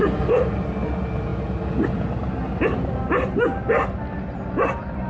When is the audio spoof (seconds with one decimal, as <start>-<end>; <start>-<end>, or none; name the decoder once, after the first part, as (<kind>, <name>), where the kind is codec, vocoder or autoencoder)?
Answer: none

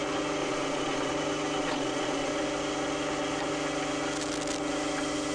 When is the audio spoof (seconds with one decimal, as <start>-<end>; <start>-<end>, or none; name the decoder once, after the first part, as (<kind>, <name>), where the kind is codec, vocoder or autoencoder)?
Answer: 0.4-1.1 (vocoder, Vocos); 1.6-2.3

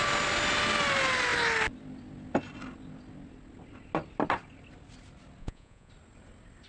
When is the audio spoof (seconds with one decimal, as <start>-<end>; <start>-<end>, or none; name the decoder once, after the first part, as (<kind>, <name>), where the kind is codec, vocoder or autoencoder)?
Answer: 5.4-5.9 (vocoder, Vocos)

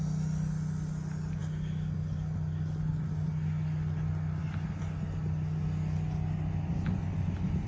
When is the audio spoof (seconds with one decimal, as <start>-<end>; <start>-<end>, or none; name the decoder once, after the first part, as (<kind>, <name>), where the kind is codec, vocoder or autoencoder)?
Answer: none

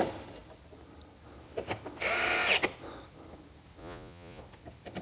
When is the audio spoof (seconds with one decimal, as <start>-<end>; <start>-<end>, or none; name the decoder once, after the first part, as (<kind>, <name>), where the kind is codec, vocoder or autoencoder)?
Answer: 3.8-4.4 (vocoder, Vocos)

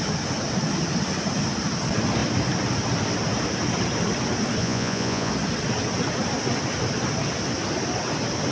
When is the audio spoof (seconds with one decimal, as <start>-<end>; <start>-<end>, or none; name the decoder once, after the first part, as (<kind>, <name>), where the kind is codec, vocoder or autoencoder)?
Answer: 4.6-5.3 (vocoder, Vocos)

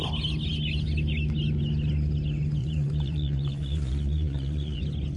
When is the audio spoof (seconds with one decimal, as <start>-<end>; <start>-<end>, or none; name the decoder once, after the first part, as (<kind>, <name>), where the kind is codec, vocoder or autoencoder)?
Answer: 2.6-4.8 (vocoder, Vocos)

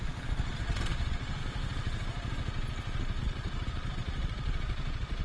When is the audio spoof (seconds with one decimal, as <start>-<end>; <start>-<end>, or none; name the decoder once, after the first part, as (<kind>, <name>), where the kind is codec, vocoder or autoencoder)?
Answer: 0.0-1.4 (vocoder, Vocos); 3.2-5.2